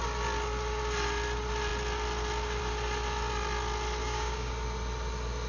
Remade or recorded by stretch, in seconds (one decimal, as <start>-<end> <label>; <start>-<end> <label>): 0.0-4.0 recorded; 4.0-4.5 remade; 4.5-5.5 recorded